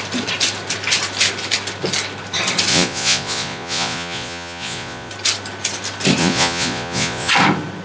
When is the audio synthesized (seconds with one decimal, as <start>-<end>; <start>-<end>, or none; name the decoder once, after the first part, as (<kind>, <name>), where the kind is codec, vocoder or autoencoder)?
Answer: 2.7-5.1 (vocoder, Vocos); 6.2-7.3